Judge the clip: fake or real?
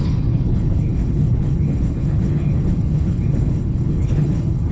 fake